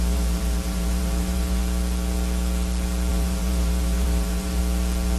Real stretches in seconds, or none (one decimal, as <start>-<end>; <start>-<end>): 1.6-3.1; 4.6-5.2